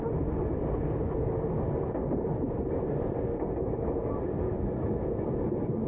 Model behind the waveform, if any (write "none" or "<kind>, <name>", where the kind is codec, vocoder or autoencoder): none